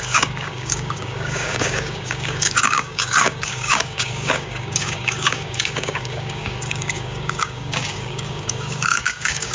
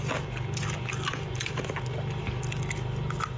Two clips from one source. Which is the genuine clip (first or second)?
second